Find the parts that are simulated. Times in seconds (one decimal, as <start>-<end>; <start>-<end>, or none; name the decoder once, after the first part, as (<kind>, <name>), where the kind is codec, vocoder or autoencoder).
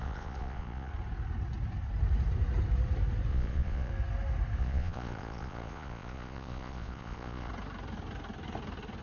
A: 0.0-0.9 (vocoder, Vocos); 3.3-3.9; 4.6-7.5